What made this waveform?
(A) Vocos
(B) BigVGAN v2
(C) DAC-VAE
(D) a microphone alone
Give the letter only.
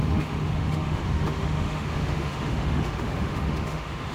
C